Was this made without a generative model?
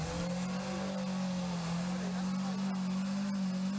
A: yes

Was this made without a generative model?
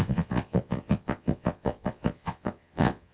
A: no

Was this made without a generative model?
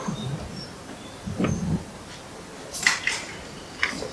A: yes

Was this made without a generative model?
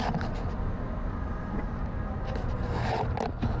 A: yes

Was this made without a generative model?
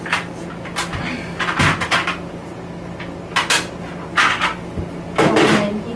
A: yes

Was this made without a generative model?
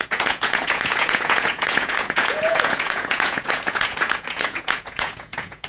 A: no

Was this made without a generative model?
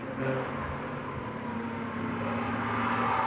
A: yes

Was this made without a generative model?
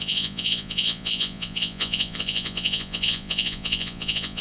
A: no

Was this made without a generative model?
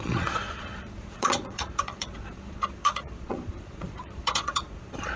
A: no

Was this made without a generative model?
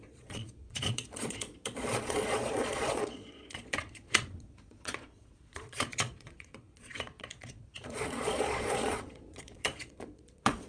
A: no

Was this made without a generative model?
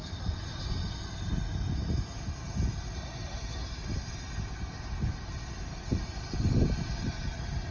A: yes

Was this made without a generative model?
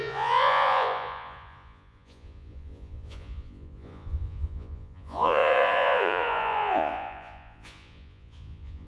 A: no